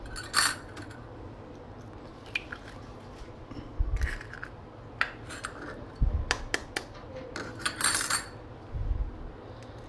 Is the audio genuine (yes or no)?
yes